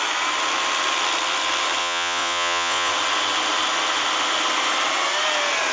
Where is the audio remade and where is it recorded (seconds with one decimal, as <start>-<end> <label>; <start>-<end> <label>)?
0.0-1.8 recorded; 1.8-2.9 remade; 2.9-5.7 recorded